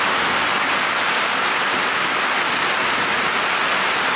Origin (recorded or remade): recorded